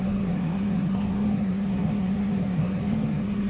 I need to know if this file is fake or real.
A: fake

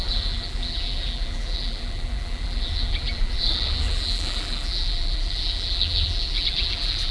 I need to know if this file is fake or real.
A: fake